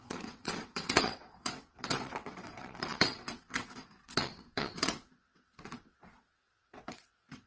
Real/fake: fake